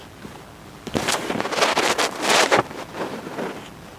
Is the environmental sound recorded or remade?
recorded